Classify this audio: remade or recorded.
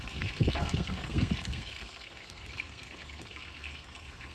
remade